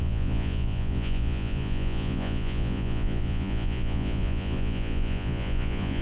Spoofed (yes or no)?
yes